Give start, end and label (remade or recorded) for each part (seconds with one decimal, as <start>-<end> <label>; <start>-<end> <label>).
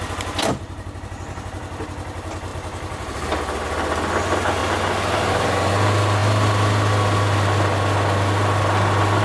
0.0-9.2 recorded